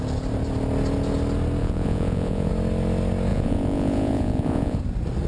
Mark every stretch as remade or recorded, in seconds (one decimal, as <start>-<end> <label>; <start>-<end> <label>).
0.0-1.6 recorded; 1.6-2.5 remade; 2.5-3.3 recorded; 3.3-4.8 remade; 4.8-5.3 recorded